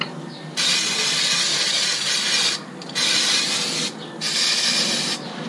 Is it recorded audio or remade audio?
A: recorded